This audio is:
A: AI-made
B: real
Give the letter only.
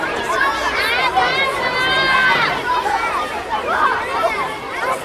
A